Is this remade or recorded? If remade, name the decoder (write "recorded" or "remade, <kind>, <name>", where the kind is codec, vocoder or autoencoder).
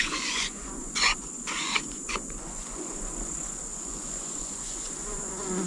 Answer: remade, vocoder, Vocos